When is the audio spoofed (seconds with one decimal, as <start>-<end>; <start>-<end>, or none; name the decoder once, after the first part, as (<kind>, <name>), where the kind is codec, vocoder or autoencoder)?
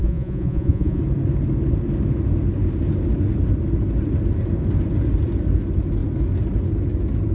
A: 0.0-1.0 (vocoder, Vocos)